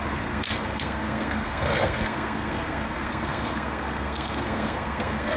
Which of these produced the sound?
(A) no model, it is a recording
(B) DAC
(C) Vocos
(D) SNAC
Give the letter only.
D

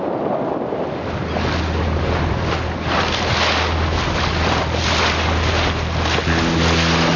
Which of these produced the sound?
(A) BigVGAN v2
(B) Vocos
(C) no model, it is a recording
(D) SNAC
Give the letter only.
C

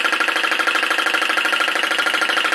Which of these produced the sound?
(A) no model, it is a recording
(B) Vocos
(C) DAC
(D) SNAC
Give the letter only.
A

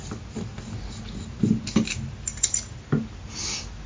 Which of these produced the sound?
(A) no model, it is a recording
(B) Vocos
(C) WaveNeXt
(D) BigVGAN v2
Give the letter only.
A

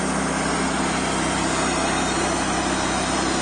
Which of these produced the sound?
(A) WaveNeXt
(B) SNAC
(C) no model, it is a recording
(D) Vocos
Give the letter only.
C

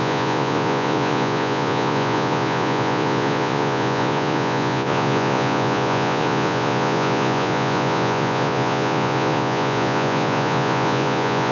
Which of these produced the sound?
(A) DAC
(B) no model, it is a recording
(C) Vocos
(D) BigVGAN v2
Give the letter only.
C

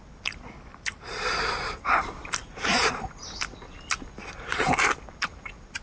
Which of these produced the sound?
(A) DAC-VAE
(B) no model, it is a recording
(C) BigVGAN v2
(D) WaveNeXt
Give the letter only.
C